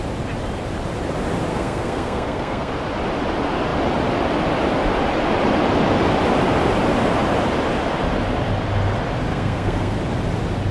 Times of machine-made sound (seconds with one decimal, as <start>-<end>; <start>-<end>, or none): 1.5-2.7; 9.3-10.0